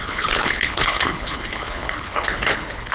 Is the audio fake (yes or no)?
yes